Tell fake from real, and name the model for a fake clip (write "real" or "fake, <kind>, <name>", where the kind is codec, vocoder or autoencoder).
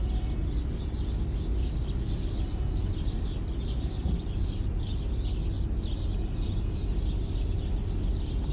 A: real